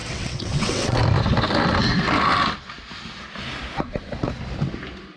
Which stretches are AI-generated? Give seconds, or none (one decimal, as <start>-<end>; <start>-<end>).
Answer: 0.0-1.0